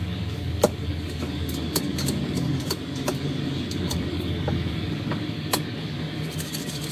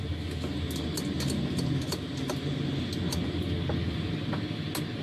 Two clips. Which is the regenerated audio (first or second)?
first